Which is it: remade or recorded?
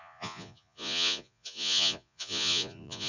remade